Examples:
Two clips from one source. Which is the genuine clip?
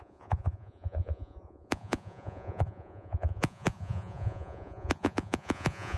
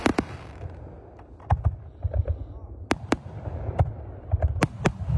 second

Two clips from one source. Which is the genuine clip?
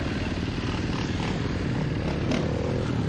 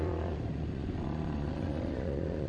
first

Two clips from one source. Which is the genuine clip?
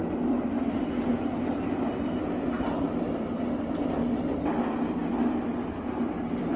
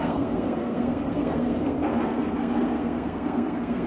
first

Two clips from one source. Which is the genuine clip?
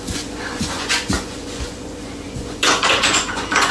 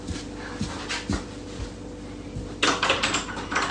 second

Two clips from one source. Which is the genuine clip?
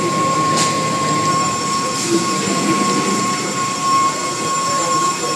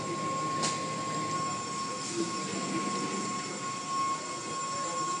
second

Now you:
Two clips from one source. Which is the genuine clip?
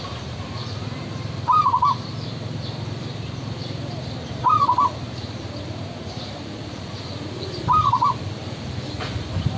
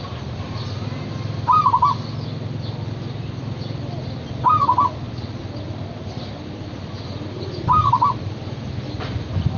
second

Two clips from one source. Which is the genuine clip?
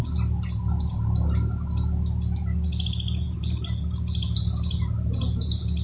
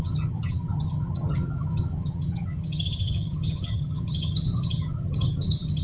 first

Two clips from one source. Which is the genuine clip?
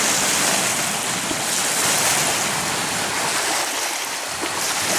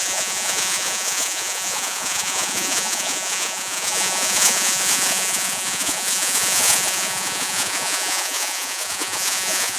first